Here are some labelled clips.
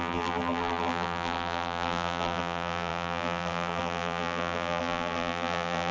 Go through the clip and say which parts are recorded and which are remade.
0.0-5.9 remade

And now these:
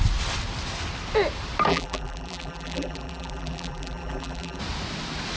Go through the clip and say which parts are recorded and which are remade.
0.0-1.7 recorded; 1.7-4.6 remade; 4.6-5.4 recorded

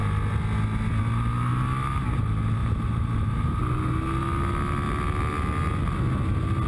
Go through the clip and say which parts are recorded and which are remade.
0.0-2.6 recorded; 2.6-3.6 remade; 3.6-6.7 recorded

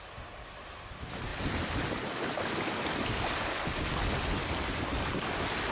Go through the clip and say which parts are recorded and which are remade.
0.0-1.3 recorded; 1.3-3.2 remade; 3.2-5.7 recorded

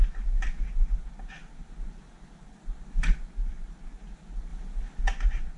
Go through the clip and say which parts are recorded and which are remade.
0.0-5.6 recorded

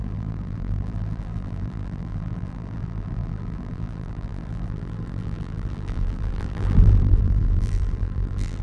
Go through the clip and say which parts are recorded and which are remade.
0.0-8.6 remade

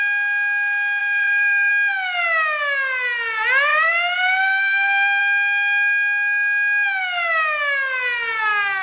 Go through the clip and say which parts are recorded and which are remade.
0.0-1.0 recorded; 1.0-1.7 remade; 1.7-3.7 recorded; 3.7-5.2 remade; 5.2-8.8 recorded